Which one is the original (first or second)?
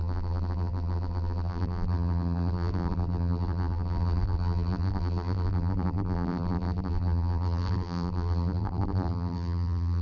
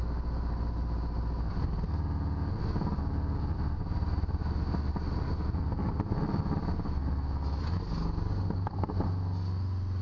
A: second